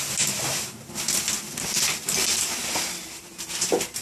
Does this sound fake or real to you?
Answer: real